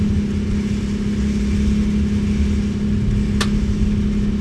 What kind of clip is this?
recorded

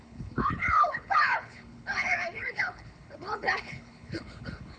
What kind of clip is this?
remade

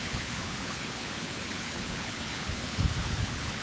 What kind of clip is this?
remade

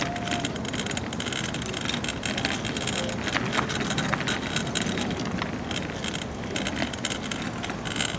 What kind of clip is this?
recorded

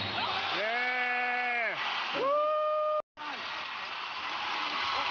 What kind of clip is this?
recorded